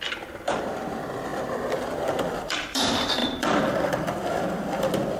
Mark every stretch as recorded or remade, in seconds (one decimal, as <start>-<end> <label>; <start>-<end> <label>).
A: 0.0-5.2 remade